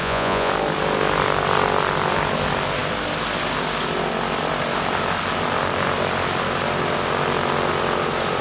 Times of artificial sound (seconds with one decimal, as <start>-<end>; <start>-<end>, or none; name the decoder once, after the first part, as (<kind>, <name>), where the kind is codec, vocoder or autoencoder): 0.0-0.5 (vocoder, Vocos)